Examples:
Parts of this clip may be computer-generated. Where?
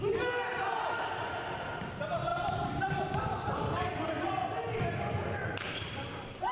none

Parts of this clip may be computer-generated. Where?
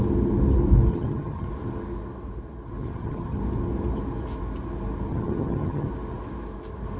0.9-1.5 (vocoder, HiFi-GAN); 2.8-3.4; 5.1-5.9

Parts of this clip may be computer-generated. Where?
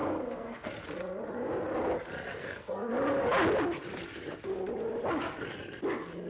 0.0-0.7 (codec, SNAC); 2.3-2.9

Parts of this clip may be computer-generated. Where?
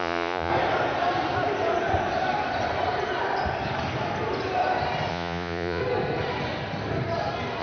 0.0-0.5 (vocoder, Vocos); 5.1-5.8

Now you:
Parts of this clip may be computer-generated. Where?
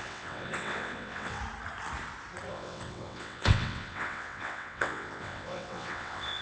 0.0-1.4 (vocoder, WaveNeXt); 2.5-6.4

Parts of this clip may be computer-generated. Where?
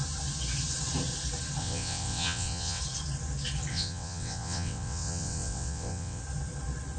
1.6-2.8 (vocoder, WaveNeXt); 3.7-6.2